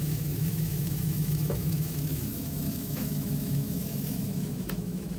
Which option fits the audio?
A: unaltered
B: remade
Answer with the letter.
B